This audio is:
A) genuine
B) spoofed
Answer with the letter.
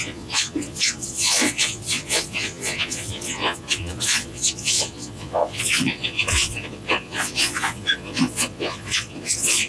B